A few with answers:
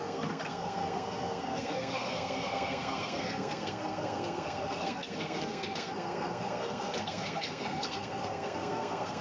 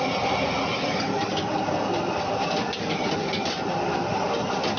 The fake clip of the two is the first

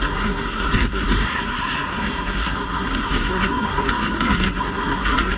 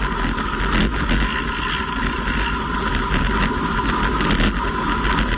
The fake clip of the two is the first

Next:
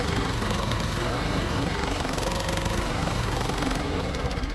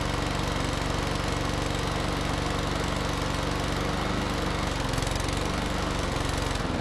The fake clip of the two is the first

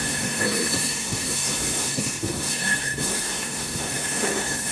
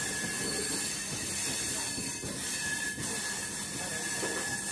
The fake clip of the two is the first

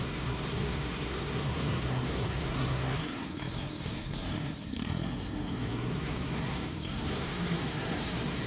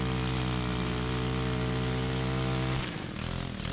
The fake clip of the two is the first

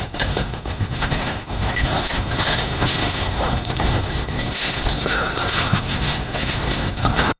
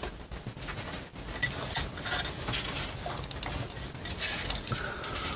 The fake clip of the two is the first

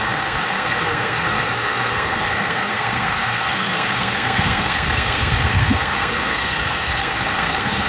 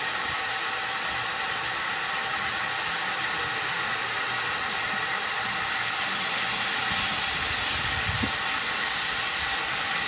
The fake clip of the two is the first